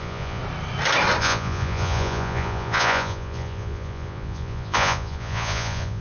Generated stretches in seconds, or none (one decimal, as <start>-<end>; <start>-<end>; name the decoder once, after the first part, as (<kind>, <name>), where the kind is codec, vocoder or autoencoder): 0.0-0.4 (vocoder, Vocos); 1.2-6.0